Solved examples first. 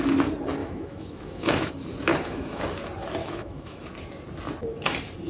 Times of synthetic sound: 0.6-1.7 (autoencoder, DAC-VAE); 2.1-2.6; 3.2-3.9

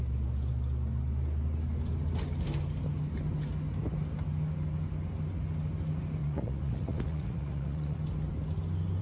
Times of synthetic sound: 6.2-8.0 (vocoder, Vocos)

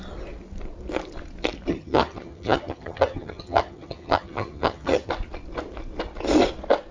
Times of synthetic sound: 1.7-5.1 (vocoder, HiFi-GAN)

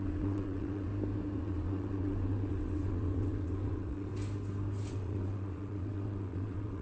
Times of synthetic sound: 0.0-0.9 (vocoder, WaveNeXt); 1.4-4.1; 4.9-6.8

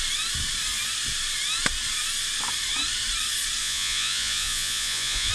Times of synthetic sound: 3.6-5.3 (vocoder, Vocos)

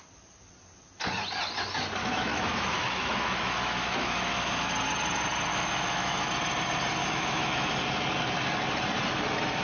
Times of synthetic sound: 2.0-4.7 (autoencoder, DAC-VAE); 5.5-6.3; 7.0-7.7

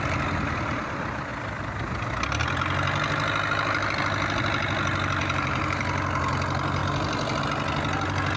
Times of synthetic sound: 5.2-5.8 (vocoder, BigVGAN v2)